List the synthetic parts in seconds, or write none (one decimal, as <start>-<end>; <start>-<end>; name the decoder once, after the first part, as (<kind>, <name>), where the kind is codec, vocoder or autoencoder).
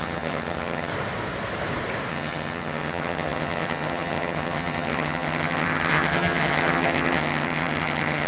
0.0-0.9 (vocoder, HiFi-GAN); 2.1-8.3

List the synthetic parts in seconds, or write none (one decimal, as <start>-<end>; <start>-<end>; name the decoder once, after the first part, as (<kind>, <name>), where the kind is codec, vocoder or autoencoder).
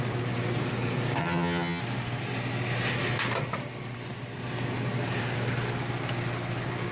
1.2-1.8 (vocoder, HiFi-GAN)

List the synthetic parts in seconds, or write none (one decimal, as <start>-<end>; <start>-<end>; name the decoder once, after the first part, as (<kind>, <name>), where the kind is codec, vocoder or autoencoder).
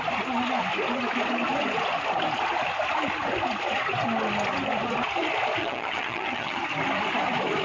5.6-6.6 (vocoder, HiFi-GAN)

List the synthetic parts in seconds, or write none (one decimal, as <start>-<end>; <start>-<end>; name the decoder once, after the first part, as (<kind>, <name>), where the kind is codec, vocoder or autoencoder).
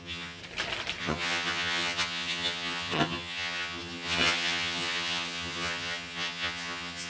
0.0-0.4 (vocoder, HiFi-GAN); 1.0-7.1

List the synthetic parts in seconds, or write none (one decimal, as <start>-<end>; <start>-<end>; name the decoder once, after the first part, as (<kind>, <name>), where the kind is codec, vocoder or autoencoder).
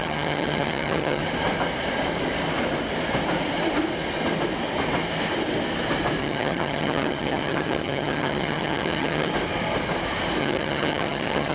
0.0-1.2 (vocoder, HiFi-GAN); 6.2-9.3; 10.4-11.5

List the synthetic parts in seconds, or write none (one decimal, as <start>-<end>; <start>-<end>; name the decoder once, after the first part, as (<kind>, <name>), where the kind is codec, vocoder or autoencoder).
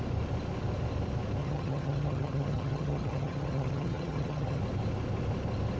1.4-4.6 (vocoder, HiFi-GAN)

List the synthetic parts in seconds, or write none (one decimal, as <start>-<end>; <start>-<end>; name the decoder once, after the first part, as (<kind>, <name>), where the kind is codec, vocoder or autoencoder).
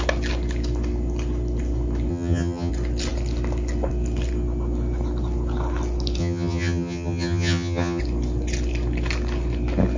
2.1-2.7 (vocoder, HiFi-GAN); 6.2-8.0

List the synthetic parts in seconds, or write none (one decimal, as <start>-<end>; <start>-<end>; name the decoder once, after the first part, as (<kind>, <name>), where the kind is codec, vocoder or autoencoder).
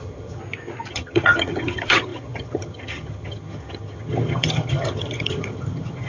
0.0-0.4 (vocoder, HiFi-GAN); 0.9-6.1